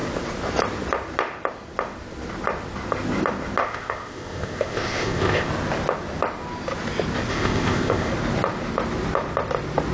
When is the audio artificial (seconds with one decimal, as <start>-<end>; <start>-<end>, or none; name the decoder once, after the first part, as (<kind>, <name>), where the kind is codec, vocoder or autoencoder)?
3.6-5.5 (codec, ZipCodec); 7.3-8.1